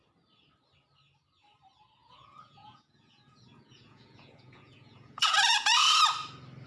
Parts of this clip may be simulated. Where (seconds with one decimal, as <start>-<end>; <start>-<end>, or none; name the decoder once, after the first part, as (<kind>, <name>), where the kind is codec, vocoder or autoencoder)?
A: 2.0-6.0 (vocoder, Vocos)